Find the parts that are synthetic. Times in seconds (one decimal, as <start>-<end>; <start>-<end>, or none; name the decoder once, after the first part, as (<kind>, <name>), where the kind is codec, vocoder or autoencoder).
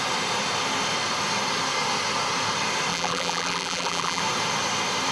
2.9-4.2 (vocoder, BigVGAN v2)